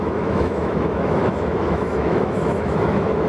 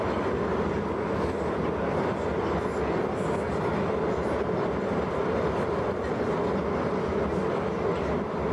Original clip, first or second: second